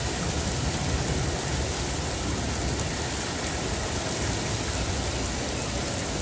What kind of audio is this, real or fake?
real